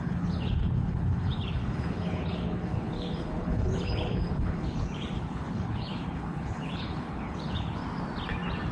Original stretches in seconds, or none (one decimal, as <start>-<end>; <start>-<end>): 7.8-8.7